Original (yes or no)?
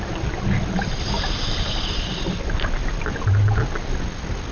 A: yes